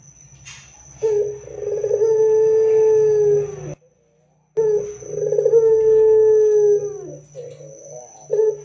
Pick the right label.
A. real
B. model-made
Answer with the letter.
A